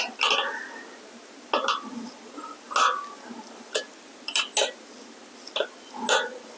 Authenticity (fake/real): real